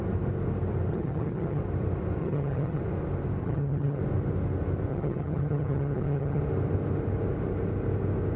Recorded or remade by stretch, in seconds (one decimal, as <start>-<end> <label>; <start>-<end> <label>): 0.0-0.9 recorded; 0.9-1.6 remade; 1.6-2.2 recorded; 2.2-2.8 remade; 2.8-3.4 recorded; 3.4-4.0 remade; 4.0-4.9 recorded; 4.9-6.4 remade; 6.4-8.4 recorded